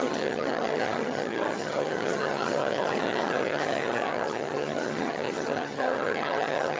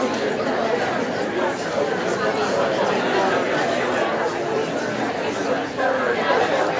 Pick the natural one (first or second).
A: second